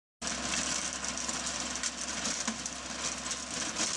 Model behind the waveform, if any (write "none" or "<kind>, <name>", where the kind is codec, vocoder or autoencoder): none